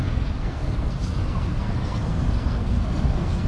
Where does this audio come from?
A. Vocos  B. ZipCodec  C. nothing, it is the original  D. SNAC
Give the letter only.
D